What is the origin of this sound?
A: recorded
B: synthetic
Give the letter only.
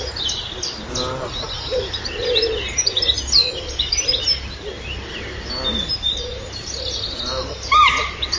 A